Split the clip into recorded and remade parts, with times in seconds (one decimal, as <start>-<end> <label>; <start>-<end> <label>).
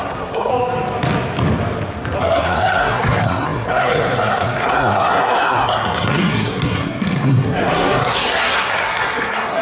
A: 0.0-0.5 remade; 0.5-2.2 recorded; 2.2-9.6 remade